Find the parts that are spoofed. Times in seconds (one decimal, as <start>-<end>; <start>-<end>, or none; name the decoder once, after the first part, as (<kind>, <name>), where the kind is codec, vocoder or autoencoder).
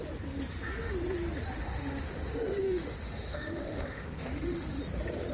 1.6-4.8 (autoencoder, DAC-VAE)